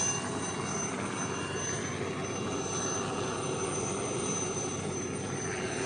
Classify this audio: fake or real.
real